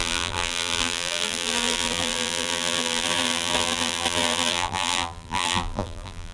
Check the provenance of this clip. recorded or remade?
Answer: remade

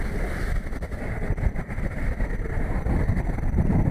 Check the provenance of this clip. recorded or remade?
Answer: recorded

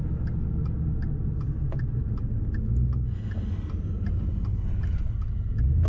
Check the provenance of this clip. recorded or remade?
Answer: recorded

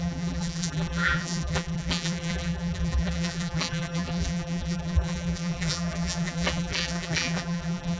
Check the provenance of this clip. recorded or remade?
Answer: remade